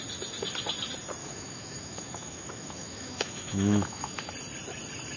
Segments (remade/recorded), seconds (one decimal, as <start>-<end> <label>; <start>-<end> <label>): 0.0-1.2 recorded; 1.2-4.3 remade; 4.3-5.2 recorded